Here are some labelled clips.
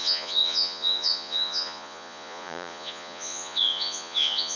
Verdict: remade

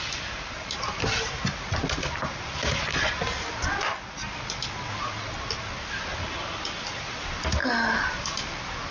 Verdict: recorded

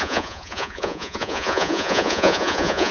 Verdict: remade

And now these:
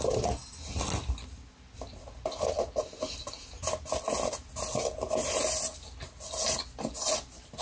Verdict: recorded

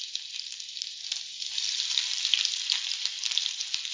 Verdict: remade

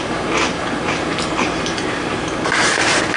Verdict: remade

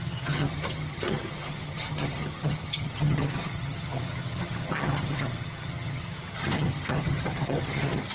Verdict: remade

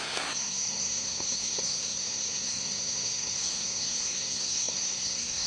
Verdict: remade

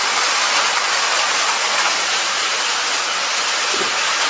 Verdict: recorded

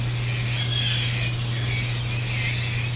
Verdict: recorded